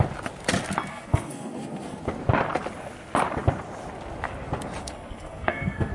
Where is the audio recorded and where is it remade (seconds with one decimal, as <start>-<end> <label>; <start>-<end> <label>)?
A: 0.0-0.9 recorded; 0.9-2.0 remade; 2.0-4.8 recorded; 4.8-5.9 remade